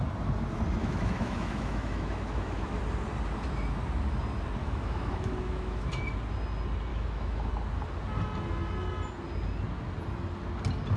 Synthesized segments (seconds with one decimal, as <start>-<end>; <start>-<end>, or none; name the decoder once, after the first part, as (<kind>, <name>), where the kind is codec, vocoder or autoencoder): 0.8-2.8 (autoencoder, DAC-VAE); 4.6-5.9; 6.9-7.5